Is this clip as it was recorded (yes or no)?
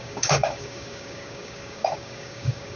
no